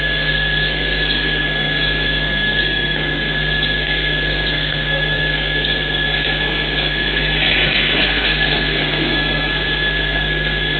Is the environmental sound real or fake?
fake